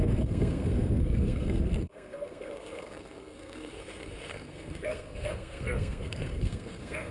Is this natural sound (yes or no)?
no